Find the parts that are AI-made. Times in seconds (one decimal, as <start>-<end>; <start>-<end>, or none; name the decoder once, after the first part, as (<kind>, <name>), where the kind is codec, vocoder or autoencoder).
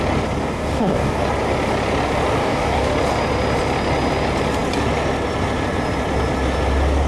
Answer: 0.4-1.2 (codec, DAC); 2.4-2.9